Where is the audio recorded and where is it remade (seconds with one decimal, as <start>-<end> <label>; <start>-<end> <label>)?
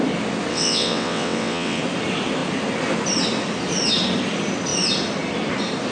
0.0-0.5 recorded; 0.5-1.8 remade; 1.8-5.9 recorded